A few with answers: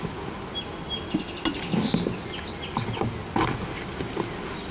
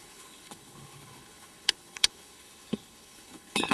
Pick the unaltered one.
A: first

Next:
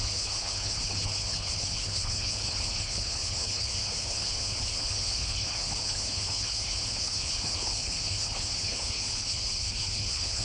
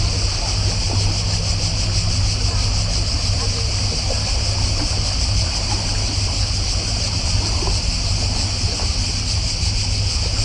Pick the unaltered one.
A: second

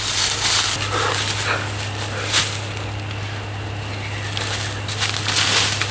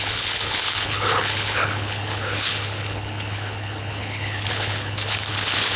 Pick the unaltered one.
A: first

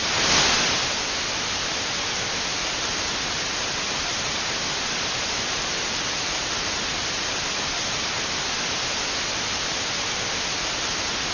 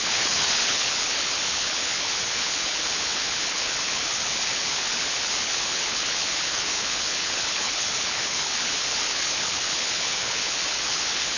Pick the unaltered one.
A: first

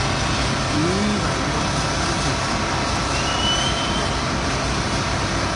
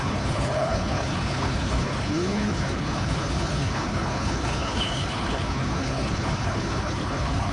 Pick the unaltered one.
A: first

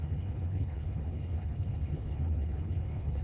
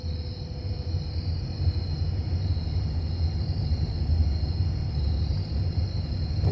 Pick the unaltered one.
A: second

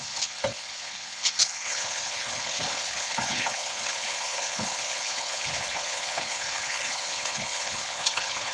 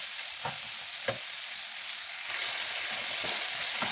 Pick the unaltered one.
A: second